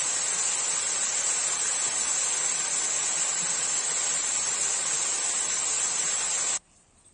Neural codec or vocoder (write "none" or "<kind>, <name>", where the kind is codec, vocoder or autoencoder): none